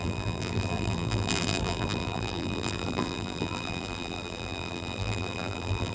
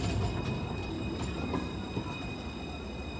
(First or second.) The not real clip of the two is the first